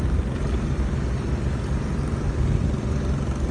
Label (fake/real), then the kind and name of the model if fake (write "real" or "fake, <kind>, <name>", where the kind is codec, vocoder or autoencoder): real